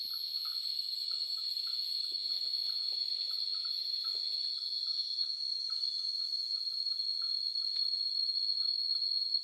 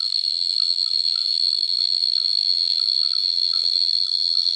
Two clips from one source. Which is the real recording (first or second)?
first